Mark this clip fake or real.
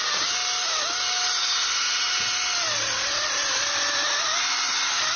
real